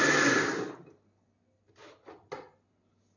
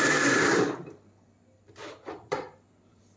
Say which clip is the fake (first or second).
second